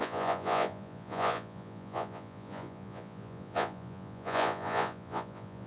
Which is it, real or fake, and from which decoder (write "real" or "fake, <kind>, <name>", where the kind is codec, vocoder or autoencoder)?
fake, vocoder, Vocos